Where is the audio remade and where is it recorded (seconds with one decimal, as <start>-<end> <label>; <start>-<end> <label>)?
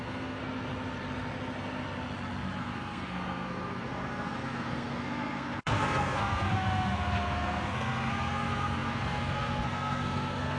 0.0-0.4 remade; 0.4-2.6 recorded; 2.6-10.6 remade